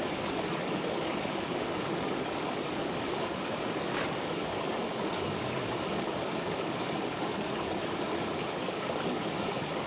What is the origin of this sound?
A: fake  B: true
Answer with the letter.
A